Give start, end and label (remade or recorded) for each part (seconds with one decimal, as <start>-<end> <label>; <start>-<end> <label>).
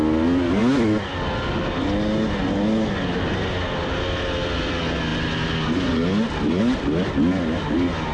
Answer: 0.0-8.1 recorded